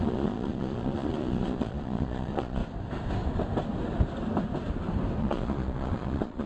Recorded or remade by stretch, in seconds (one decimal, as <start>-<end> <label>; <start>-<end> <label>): 0.0-2.6 remade; 2.6-5.2 recorded; 5.2-6.5 remade